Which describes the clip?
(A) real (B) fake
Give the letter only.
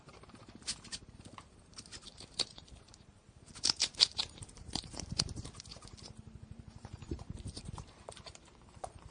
B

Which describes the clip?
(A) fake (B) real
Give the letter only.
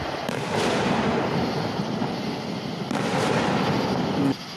B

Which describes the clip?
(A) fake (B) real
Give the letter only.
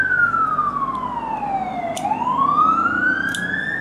B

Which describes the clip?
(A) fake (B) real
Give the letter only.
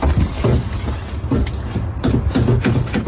B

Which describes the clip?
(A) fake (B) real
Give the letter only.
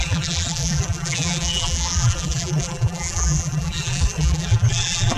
A